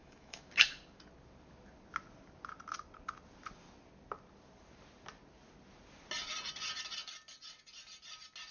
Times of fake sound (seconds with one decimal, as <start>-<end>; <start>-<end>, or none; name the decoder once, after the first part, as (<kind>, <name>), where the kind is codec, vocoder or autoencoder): 0.0-0.5 (autoencoder, DAC-VAE)